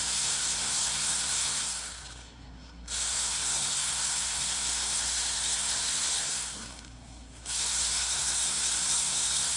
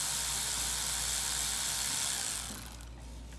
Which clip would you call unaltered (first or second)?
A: second